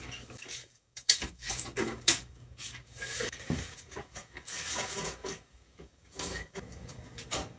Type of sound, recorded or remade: remade